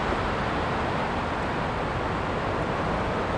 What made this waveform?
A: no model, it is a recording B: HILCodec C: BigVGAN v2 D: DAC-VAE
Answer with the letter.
A